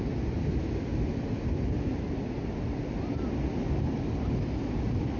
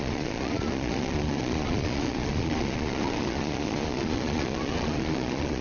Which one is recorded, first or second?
first